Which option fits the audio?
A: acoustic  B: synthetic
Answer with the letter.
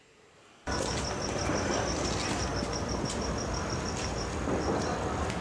A